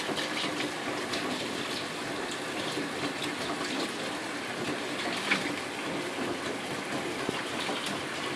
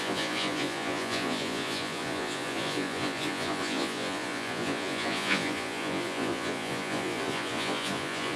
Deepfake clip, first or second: second